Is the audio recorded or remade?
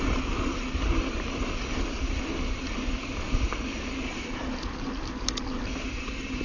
recorded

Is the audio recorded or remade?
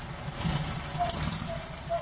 remade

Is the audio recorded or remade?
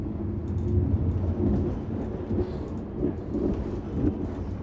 recorded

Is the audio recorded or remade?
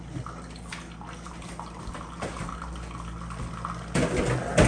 recorded